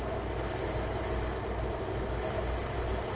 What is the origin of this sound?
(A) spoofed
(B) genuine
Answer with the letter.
B